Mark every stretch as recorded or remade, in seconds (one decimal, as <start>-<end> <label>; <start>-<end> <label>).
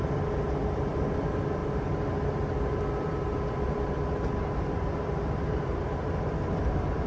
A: 0.0-7.1 recorded